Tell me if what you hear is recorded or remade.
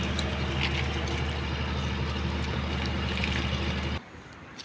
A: recorded